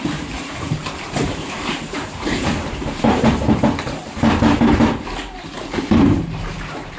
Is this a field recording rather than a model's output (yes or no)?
no